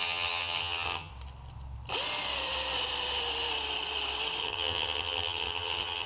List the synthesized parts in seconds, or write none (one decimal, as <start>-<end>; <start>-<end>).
0.0-1.1; 4.4-6.1